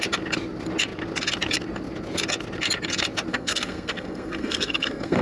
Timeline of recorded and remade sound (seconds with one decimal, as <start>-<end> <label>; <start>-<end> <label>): 0.0-3.3 recorded; 3.3-5.2 remade

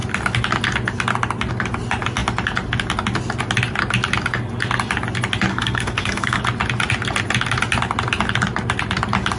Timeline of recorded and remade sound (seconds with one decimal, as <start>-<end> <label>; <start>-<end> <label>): 0.0-5.5 recorded; 5.5-6.4 remade; 6.4-9.4 recorded

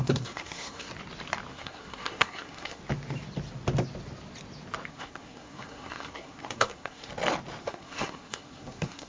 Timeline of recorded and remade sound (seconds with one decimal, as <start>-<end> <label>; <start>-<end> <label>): 0.0-0.9 remade; 0.9-1.5 recorded; 1.5-2.8 remade; 2.8-4.9 recorded; 4.9-7.1 remade; 7.1-7.6 recorded; 7.6-9.1 remade

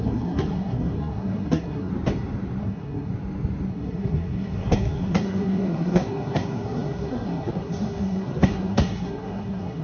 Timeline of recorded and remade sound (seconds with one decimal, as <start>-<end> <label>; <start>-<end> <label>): 0.0-1.9 remade; 1.9-2.6 recorded; 2.6-3.1 remade; 3.1-3.7 recorded; 3.7-9.8 remade

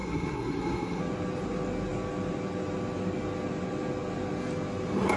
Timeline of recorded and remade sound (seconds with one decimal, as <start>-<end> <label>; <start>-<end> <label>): 0.0-1.0 remade; 1.0-5.2 recorded

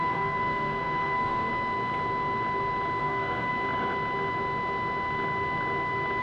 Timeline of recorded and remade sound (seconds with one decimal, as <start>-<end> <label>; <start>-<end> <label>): 0.0-1.5 remade; 1.5-3.0 recorded; 3.0-3.5 remade; 3.5-6.2 recorded

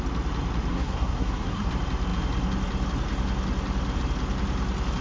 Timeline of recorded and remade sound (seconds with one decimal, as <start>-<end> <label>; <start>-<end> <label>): 0.0-0.7 recorded; 0.7-1.7 remade; 1.7-5.0 recorded

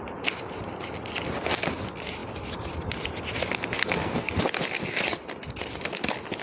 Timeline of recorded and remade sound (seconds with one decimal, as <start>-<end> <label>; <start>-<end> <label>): 0.0-3.8 recorded; 3.8-4.4 remade; 4.4-6.4 recorded